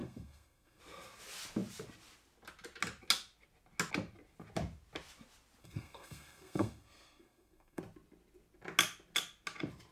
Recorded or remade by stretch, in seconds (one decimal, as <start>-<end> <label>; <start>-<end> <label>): 0.0-0.8 remade; 0.8-5.6 recorded; 5.6-7.8 remade; 7.8-9.9 recorded